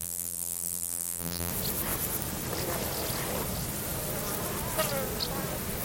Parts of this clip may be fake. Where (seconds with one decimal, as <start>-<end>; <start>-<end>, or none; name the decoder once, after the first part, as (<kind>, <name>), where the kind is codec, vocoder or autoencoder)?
0.0-1.5 (vocoder, BigVGAN v2)